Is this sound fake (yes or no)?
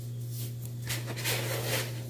no